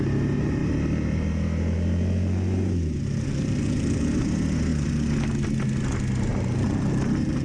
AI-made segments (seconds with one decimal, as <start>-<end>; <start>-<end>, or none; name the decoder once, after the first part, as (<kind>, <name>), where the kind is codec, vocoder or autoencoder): none